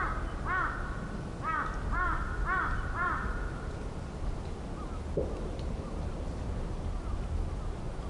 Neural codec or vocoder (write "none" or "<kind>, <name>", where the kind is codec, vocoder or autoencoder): none